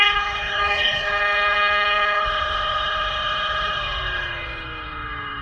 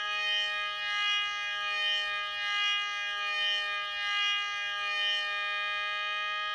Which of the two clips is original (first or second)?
second